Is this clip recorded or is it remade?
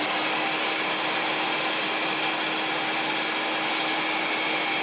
recorded